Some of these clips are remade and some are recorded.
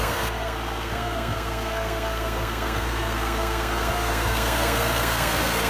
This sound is remade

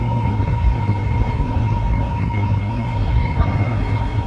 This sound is remade